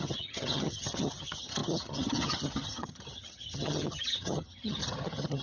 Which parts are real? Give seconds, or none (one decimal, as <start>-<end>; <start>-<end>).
none